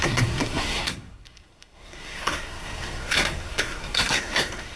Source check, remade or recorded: remade